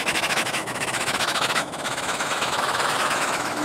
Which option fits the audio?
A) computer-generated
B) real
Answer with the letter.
A